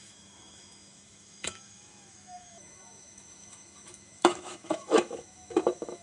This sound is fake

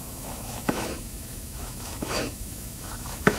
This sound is fake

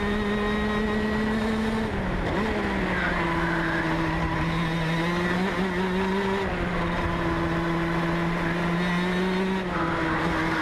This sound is real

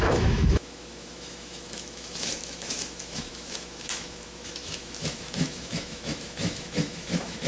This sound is fake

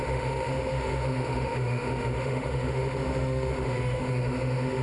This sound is fake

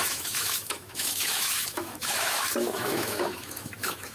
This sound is fake